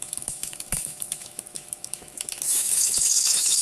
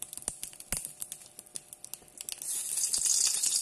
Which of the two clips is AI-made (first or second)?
first